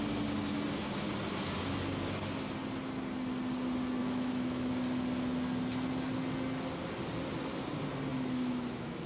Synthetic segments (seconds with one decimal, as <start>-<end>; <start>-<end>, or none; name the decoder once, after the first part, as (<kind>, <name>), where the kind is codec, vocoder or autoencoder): 4.0-4.7 (autoencoder, DAC-VAE); 8.1-9.1

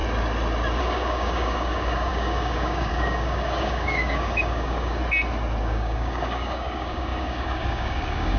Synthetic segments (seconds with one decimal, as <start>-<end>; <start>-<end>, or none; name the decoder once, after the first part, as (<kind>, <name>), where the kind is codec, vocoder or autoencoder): 0.8-5.0 (codec, DAC); 5.6-8.4

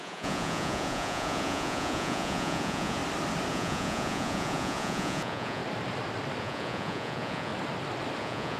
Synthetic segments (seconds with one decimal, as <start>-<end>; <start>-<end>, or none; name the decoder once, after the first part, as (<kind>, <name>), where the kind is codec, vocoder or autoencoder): 0.0-3.0 (vocoder, Vocos); 3.5-5.6; 6.4-7.5; 8.2-8.6

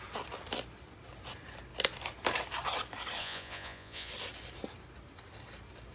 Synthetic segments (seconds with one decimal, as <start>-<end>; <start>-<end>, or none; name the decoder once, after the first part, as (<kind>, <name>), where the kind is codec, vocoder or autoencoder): 3.2-4.1 (vocoder, Vocos)

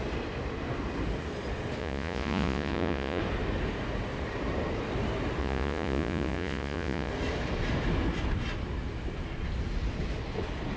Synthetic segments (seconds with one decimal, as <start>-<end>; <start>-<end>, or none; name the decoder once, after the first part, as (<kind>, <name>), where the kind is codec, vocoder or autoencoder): 1.8-3.2 (vocoder, Vocos); 5.4-7.1